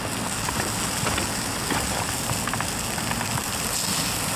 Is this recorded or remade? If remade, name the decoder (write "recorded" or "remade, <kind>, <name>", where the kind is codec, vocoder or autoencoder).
recorded